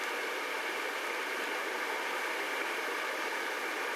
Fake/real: fake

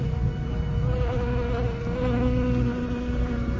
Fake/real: real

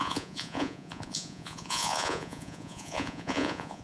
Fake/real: fake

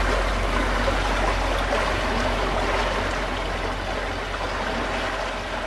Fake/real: real